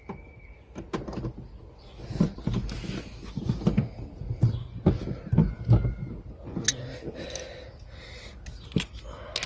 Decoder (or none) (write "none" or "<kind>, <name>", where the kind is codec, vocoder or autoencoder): none